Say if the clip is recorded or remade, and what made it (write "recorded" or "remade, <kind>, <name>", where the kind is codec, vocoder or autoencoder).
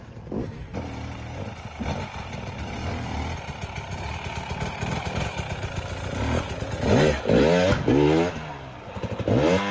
recorded